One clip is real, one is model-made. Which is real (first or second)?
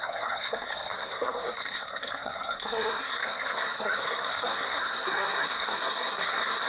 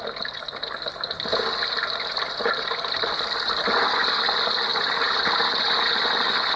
second